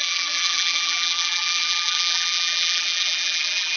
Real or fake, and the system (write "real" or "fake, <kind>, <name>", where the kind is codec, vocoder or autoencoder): fake, vocoder, BigVGAN v2